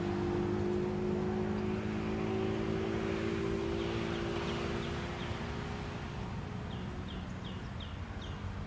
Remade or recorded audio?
recorded